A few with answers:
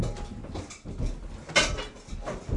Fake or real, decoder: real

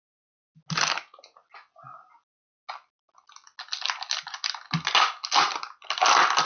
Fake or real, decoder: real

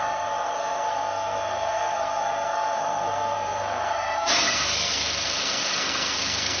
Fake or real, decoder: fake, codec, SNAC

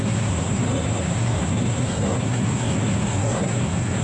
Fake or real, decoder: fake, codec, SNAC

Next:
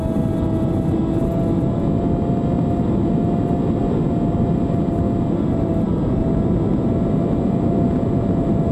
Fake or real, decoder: real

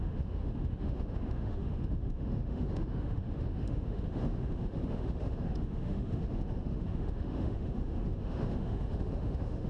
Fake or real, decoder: fake, autoencoder, DAC-VAE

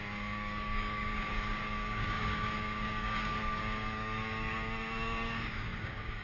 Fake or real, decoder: fake, codec, DAC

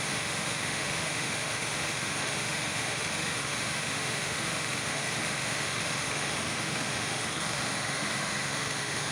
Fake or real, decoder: fake, autoencoder, DAC-VAE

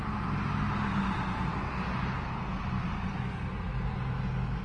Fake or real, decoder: real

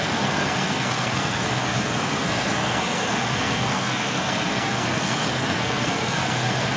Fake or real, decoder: fake, codec, SNAC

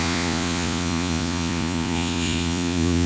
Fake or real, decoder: fake, vocoder, Vocos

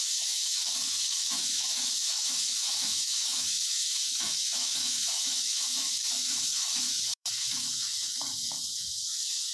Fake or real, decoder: fake, autoencoder, DAC-VAE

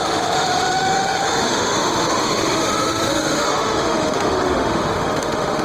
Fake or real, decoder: fake, autoencoder, DAC-VAE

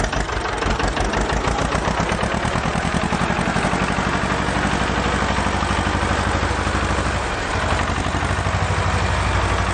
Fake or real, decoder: real